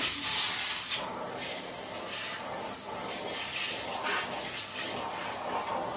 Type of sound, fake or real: real